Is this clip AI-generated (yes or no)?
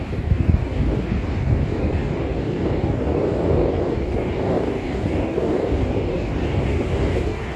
yes